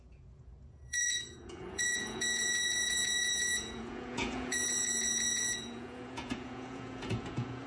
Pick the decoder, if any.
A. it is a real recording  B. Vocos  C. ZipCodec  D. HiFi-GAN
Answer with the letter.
B